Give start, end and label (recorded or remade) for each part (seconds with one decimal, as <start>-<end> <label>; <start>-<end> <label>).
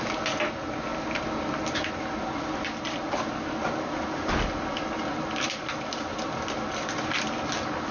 0.0-7.9 recorded